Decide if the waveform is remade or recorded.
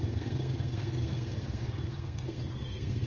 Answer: remade